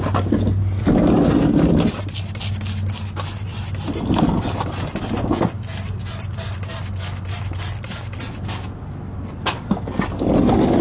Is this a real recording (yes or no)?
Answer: yes